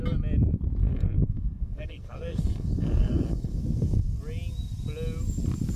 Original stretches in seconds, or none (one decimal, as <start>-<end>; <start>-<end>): 0.0-0.8; 4.2-5.8